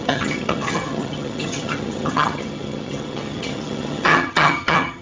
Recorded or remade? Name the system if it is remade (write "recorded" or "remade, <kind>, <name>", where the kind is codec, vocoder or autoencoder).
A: remade, vocoder, HiFi-GAN